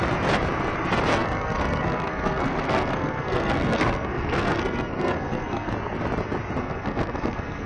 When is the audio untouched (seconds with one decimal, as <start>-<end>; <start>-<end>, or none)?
0.0-1.1; 5.7-6.6